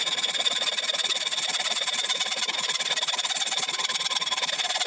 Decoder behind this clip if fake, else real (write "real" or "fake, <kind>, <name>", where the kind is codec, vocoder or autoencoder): real